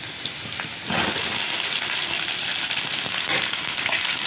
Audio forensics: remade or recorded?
recorded